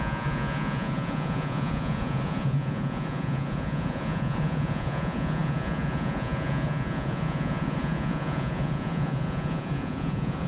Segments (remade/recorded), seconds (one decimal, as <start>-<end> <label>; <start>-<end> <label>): 0.0-10.5 remade